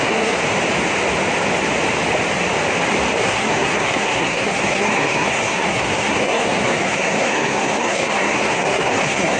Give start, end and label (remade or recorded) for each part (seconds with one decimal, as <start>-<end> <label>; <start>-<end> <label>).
0.0-0.4 remade; 0.4-3.2 recorded; 3.2-9.4 remade